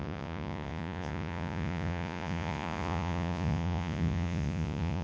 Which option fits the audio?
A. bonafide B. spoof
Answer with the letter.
B